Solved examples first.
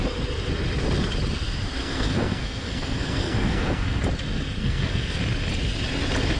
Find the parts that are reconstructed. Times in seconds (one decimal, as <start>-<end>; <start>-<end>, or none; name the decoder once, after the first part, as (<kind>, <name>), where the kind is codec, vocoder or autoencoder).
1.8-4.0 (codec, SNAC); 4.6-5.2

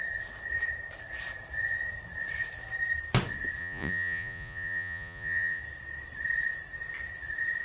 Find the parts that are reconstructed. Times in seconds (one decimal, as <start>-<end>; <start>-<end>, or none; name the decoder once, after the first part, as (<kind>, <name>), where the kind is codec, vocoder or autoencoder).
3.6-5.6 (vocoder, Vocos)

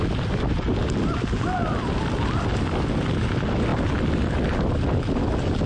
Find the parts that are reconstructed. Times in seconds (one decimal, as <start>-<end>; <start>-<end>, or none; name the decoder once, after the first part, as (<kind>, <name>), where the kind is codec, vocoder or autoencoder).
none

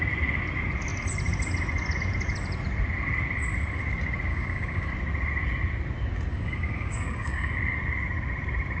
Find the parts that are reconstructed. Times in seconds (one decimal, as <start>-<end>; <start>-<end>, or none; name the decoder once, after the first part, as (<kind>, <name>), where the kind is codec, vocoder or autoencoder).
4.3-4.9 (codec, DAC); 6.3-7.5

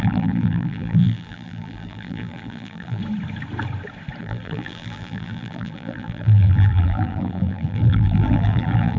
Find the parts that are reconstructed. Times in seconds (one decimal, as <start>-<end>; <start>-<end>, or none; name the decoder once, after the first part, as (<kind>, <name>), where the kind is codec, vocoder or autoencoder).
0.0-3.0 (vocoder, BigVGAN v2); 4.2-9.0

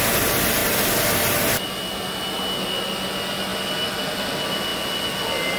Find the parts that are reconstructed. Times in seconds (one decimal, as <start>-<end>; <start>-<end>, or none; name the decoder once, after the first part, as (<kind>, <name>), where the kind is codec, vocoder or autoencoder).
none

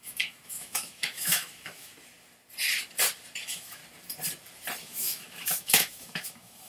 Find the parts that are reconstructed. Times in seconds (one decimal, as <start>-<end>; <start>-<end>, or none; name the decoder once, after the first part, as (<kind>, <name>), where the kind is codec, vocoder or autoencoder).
0.0-1.9 (autoencoder, DAC-VAE); 3.4-3.8; 4.8-6.7

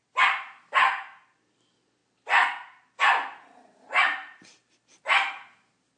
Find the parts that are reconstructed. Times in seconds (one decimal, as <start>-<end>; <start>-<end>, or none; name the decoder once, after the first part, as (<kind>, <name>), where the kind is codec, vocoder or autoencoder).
none